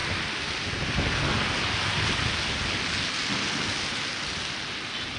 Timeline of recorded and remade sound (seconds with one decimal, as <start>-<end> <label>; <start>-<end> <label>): 0.0-5.2 recorded